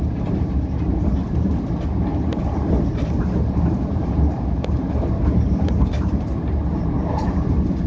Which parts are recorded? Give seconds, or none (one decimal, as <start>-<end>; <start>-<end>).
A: 1.5-2.1; 6.2-6.7